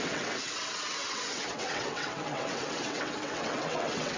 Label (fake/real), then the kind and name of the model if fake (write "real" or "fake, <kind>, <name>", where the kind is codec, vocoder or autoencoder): fake, vocoder, WaveNeXt